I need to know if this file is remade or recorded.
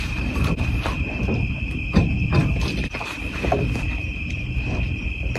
remade